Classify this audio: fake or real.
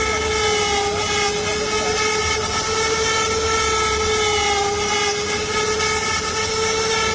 real